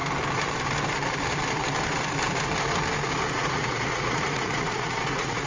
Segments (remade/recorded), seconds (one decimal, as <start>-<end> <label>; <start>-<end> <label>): 0.0-3.3 recorded; 3.3-5.5 remade

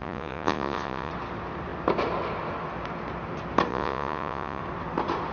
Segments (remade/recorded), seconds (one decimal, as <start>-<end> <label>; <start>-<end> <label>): 0.0-1.1 remade; 1.1-3.7 recorded; 3.7-4.6 remade; 4.6-5.3 recorded

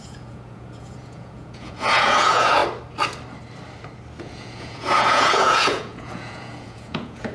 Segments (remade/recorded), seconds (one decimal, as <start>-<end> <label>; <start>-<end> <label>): 0.0-2.6 remade; 2.6-4.2 recorded; 4.2-7.3 remade

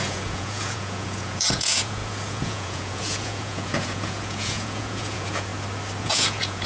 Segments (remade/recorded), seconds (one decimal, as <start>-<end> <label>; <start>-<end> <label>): 0.0-5.5 remade; 5.5-6.0 recorded; 6.0-6.7 remade

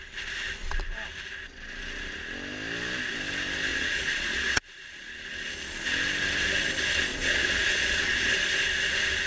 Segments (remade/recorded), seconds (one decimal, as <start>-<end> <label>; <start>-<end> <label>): 0.0-3.7 recorded; 3.7-4.6 remade; 4.6-7.1 recorded; 7.1-8.3 remade; 8.3-9.3 recorded

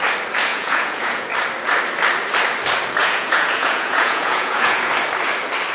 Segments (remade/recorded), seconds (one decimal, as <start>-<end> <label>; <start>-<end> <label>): 0.0-0.5 recorded; 0.5-1.3 remade; 1.3-3.0 recorded; 3.0-4.9 remade; 4.9-5.7 recorded

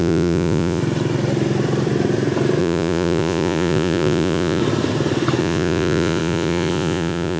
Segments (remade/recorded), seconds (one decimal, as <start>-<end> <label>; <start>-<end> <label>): 0.0-0.8 remade; 0.8-2.6 recorded; 2.6-4.6 remade; 4.6-5.4 recorded; 5.4-7.4 remade